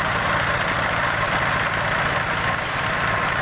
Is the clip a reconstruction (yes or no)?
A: no